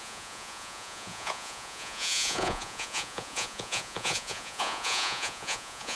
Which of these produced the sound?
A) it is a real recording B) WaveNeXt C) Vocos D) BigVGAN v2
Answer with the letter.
C